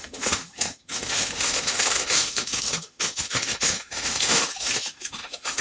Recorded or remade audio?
remade